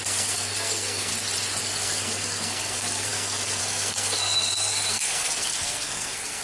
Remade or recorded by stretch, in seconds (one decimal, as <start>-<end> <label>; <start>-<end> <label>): 0.0-1.1 remade; 1.1-1.6 recorded; 1.6-6.4 remade